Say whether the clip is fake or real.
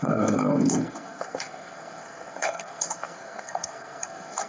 fake